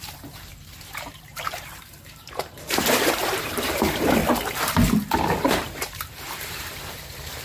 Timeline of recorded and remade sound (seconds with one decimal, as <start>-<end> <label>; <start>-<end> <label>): 0.0-4.2 remade; 4.2-5.4 recorded; 5.4-7.4 remade